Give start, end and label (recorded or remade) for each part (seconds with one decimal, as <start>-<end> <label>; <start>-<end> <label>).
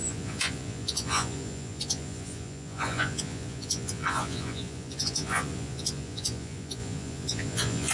0.0-7.9 remade